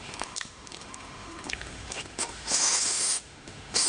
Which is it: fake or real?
fake